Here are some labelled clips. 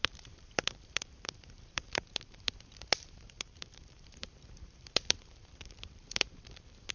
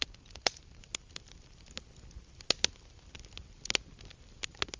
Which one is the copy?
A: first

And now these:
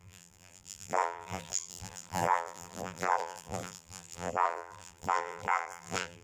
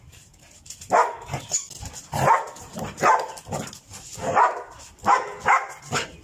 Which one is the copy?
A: first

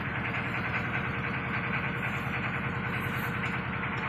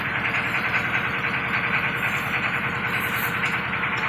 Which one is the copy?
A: second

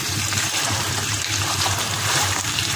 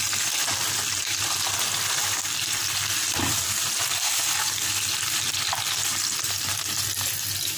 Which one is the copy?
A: first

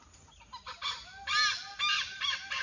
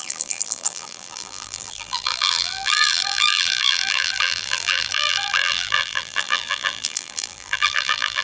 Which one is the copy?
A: second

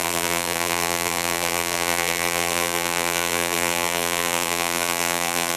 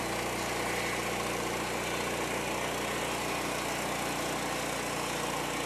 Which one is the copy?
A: first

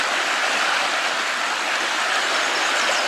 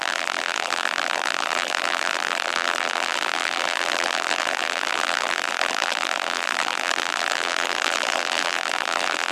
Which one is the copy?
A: second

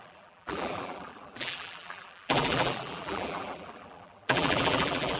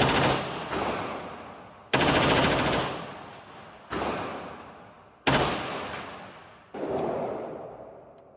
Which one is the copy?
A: first